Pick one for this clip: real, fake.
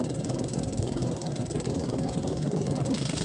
fake